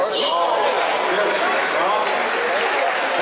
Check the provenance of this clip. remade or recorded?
recorded